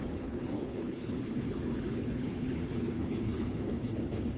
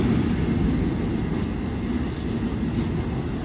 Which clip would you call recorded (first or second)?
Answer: second